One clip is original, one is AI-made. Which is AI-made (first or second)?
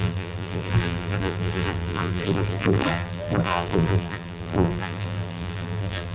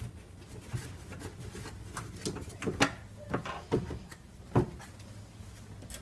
first